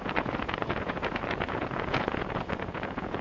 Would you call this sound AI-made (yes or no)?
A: yes